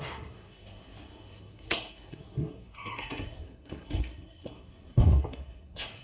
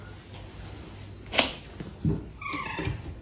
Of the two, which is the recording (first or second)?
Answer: second